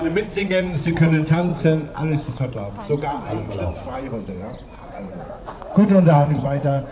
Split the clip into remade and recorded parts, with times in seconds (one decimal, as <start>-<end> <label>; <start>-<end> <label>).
0.0-1.5 remade; 1.5-5.3 recorded; 5.3-6.9 remade